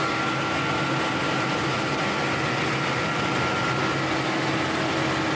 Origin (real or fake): real